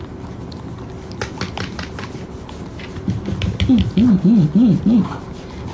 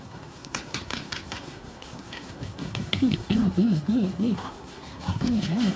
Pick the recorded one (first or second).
first